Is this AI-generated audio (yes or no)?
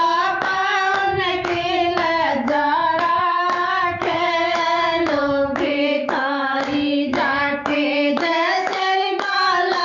yes